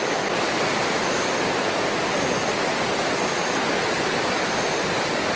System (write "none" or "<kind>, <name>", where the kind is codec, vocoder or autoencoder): none